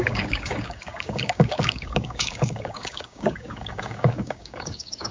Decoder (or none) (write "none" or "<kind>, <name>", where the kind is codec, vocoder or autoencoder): codec, DAC